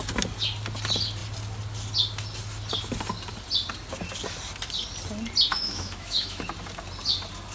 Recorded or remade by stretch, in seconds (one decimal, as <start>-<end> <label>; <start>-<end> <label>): 0.0-5.5 recorded; 5.5-6.4 remade; 6.4-7.5 recorded